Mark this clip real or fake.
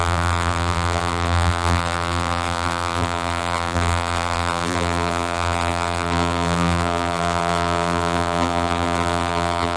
fake